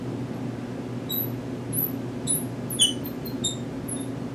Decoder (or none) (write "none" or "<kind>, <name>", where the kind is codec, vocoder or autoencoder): none